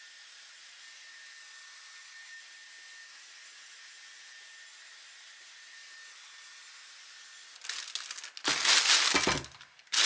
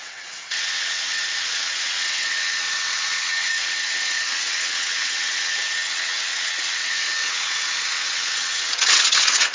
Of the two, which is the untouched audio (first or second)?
first